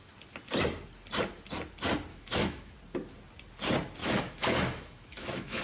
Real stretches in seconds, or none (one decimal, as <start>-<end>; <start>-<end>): 0.0-2.1; 2.7-4.0